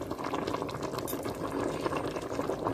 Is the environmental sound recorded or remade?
recorded